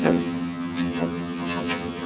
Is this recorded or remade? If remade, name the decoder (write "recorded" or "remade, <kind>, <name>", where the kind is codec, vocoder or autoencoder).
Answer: remade, vocoder, HiFi-GAN